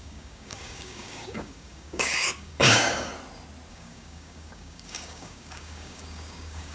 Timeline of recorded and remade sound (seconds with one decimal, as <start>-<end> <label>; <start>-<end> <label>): 0.0-3.1 remade; 3.1-3.7 recorded; 3.7-6.7 remade